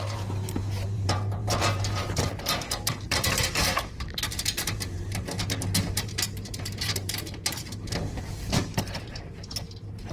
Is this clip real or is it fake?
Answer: fake